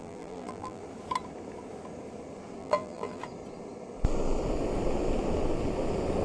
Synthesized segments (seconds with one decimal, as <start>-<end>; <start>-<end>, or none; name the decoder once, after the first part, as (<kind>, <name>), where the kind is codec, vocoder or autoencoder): 0.0-0.8 (vocoder, BigVGAN v2); 2.6-3.2